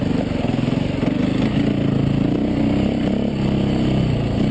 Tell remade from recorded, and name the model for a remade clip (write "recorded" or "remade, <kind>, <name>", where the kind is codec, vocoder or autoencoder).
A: recorded